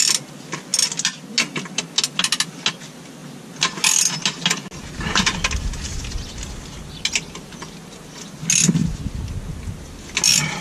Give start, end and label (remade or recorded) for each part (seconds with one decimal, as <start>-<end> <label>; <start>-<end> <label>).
0.0-10.6 recorded